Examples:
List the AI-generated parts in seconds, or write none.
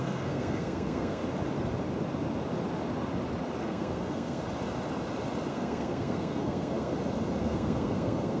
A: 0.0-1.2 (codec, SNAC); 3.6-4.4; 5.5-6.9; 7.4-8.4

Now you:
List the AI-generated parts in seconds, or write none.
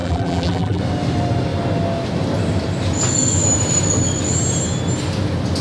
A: 0.0-0.8 (vocoder, BigVGAN v2)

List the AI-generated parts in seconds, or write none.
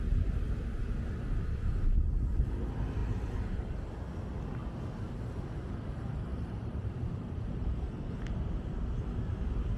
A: 4.6-5.2 (vocoder, BigVGAN v2); 6.3-7.7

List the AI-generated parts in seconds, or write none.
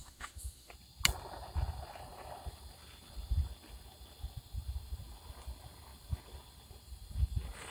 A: 0.0-0.7 (autoencoder, DAC-VAE)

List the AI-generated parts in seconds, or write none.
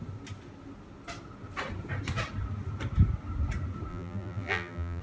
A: 3.9-5.0 (vocoder, BigVGAN v2)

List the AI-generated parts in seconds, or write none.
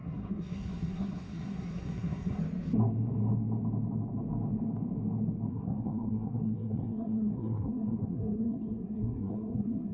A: 0.0-2.4 (codec, SNAC); 5.5-9.9